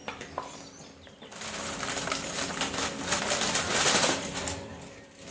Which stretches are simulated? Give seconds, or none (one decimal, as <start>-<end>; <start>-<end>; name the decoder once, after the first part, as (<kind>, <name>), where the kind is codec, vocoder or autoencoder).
0.0-3.2 (vocoder, BigVGAN v2)